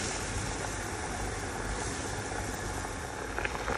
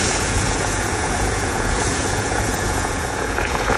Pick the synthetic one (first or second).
second